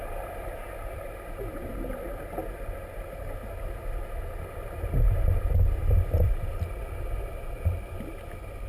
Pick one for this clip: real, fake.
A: real